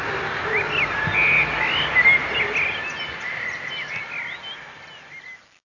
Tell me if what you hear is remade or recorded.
recorded